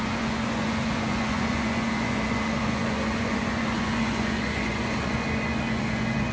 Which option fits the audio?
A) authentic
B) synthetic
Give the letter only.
B